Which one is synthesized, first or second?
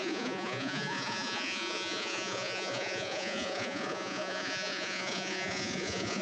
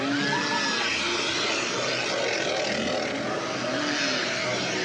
first